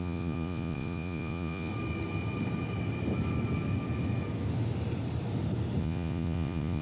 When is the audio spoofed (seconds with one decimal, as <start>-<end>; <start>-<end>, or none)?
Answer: 0.0-1.7; 5.8-6.8